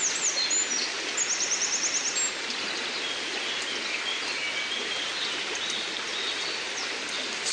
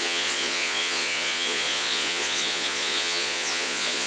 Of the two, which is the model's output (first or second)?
second